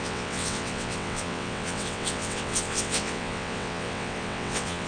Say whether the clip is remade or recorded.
remade